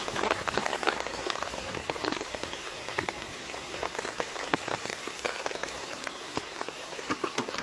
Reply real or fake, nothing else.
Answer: fake